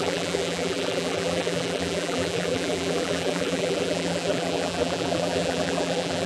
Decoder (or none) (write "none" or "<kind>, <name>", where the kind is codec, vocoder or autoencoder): vocoder, BigVGAN v2